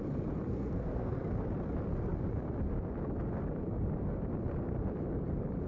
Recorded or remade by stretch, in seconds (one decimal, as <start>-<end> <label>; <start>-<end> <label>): 0.0-0.5 recorded; 0.5-1.3 remade; 1.3-5.7 recorded

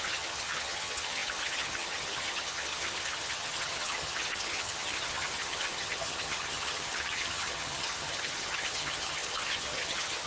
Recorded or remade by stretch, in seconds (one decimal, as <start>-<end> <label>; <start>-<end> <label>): 0.0-10.3 remade

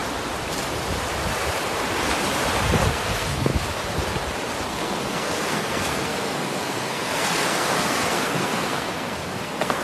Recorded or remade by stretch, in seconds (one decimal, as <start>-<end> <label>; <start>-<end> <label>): 0.0-2.9 recorded; 2.9-3.5 remade; 3.5-4.6 recorded; 4.6-9.8 remade

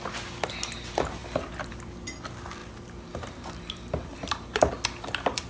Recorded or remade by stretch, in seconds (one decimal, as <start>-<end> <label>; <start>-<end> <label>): 0.0-2.6 recorded; 2.6-4.7 remade; 4.7-5.5 recorded

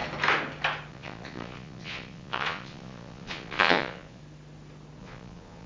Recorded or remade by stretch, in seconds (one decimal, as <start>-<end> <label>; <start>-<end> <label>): 0.0-0.9 recorded; 0.9-4.2 remade; 4.2-5.0 recorded; 5.0-5.7 remade